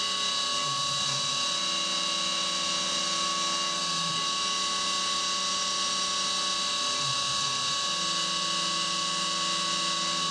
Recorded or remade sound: recorded